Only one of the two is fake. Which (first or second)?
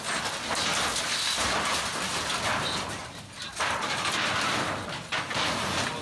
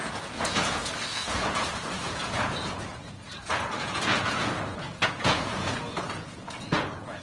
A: second